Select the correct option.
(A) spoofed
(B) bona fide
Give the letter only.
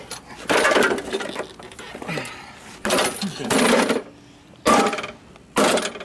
B